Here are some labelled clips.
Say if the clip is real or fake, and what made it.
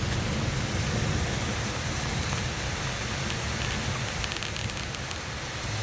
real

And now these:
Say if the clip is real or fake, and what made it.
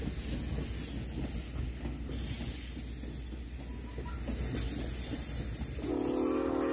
real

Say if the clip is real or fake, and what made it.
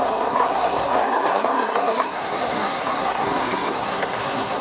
fake, codec, SNAC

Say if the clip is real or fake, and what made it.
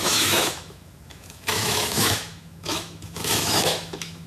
fake, autoencoder, DAC-VAE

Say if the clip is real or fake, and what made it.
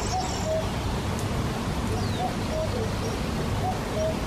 real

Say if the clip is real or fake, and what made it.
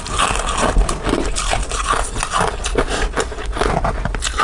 real